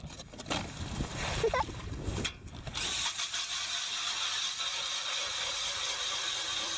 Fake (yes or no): no